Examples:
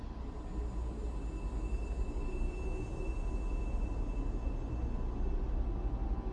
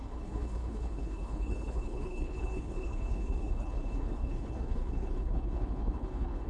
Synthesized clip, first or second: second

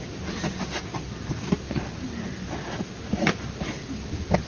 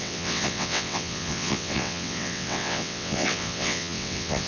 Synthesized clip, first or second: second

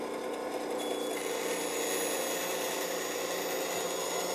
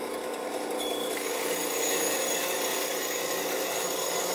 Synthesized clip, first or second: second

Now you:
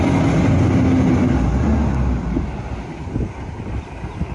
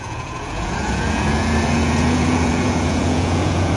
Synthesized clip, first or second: second